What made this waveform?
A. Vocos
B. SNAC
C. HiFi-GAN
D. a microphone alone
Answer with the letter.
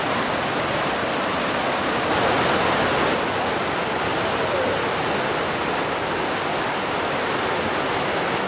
D